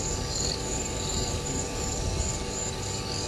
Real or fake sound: fake